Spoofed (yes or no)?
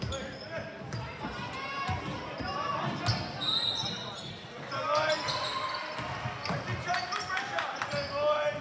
no